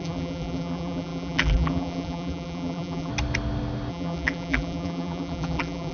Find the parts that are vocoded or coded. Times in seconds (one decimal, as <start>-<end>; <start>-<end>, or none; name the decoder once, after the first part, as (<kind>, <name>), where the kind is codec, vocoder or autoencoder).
0.0-3.1 (vocoder, BigVGAN v2); 3.9-5.9